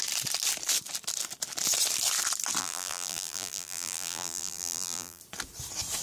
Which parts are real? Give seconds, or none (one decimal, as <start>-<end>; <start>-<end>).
0.0-2.6; 5.2-6.0